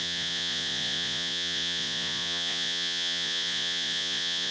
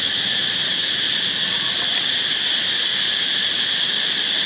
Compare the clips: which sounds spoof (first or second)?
first